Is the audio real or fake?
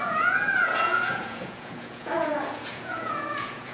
fake